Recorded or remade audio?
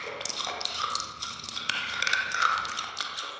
recorded